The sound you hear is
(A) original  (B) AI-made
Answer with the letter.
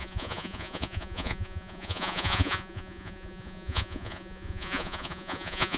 B